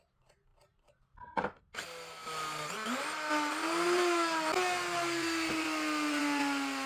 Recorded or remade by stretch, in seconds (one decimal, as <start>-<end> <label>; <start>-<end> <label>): 0.0-6.9 recorded